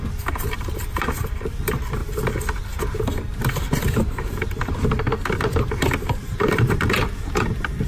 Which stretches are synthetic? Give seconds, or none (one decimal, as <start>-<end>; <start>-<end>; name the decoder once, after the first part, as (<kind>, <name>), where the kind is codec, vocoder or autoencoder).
0.0-2.0 (vocoder, BigVGAN v2); 2.8-7.9